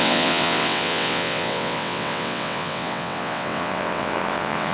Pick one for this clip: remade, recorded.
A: remade